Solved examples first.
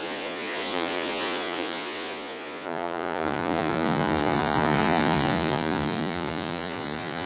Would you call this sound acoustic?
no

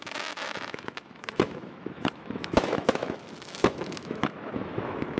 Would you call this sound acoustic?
no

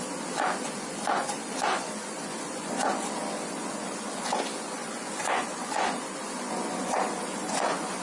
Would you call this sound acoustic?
no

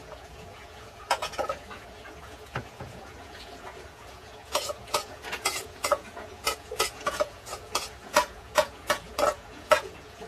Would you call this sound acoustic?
no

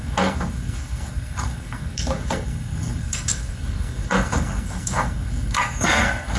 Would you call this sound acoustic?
no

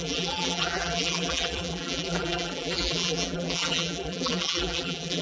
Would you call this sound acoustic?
no